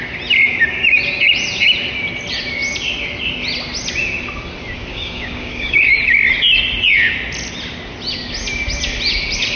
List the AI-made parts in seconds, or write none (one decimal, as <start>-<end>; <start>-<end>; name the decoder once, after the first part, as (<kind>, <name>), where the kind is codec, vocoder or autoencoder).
4.9-5.9 (codec, DAC)